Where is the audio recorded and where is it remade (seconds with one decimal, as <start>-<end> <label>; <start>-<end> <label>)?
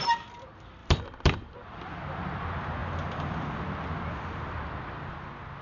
0.0-0.8 recorded; 0.8-2.0 remade; 2.0-5.6 recorded